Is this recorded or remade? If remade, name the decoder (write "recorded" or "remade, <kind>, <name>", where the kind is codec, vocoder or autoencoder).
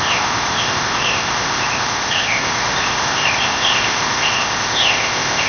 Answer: remade, codec, ZipCodec